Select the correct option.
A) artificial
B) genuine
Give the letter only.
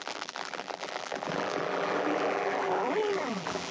A